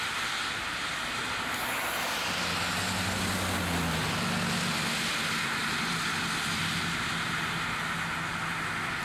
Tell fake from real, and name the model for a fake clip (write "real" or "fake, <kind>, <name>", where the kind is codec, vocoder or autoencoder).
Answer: real